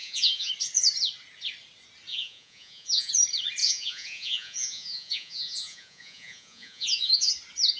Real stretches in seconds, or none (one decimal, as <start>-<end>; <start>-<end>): 0.5-2.1; 3.1-3.6; 7.3-7.8